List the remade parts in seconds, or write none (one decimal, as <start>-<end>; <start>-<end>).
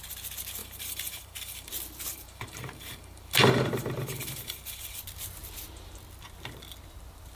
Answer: 0.6-1.7; 2.1-5.0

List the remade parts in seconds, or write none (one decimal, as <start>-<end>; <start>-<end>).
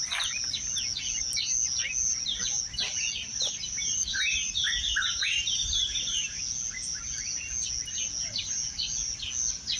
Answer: 3.3-6.4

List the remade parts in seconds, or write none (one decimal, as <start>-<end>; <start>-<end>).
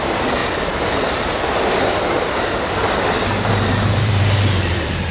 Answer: 0.0-0.4; 3.5-5.1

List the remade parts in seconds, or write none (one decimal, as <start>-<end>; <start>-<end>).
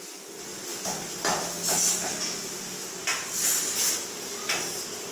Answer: none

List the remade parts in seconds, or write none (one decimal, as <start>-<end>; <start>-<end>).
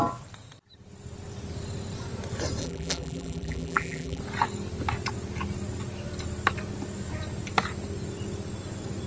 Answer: 2.6-4.2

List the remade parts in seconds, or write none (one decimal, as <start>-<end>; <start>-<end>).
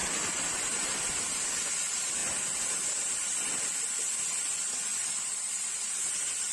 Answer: 0.0-1.0; 4.9-5.9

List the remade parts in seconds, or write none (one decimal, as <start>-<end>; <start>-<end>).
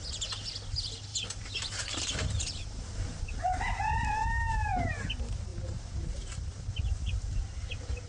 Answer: 1.1-3.2; 5.5-7.2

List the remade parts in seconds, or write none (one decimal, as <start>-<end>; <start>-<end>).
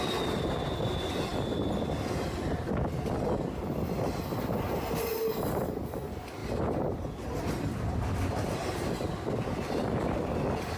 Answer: none